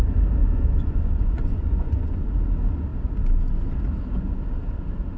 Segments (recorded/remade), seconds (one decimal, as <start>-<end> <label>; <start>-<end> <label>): 0.0-0.4 recorded; 0.4-2.3 remade; 2.3-5.2 recorded